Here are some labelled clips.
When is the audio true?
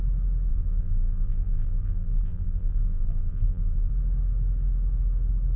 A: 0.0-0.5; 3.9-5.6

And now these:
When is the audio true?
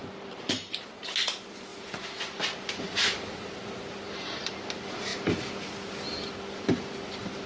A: 1.0-1.7; 4.6-7.5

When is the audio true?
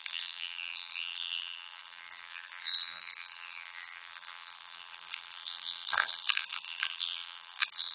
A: none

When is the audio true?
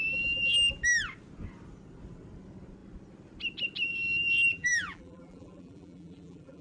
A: 0.0-4.5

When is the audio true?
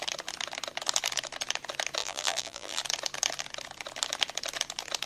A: 0.0-2.0; 2.8-5.1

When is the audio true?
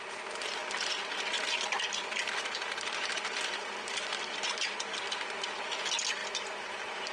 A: 0.0-0.6; 4.3-7.1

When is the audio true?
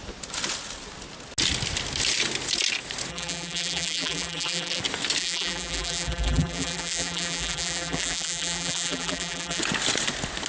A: 0.0-3.1; 4.8-5.2; 9.6-10.5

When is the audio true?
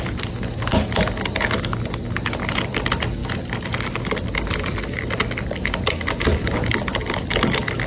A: 0.0-7.9